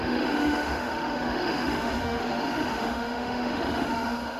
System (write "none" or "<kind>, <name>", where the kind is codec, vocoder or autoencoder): autoencoder, DAC-VAE